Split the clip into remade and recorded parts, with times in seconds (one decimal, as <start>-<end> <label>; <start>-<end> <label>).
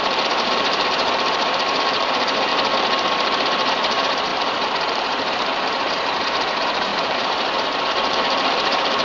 0.0-2.5 remade; 2.5-3.7 recorded; 3.7-9.0 remade